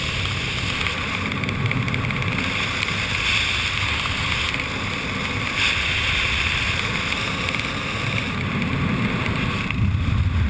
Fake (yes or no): no